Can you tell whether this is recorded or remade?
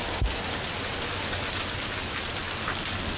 recorded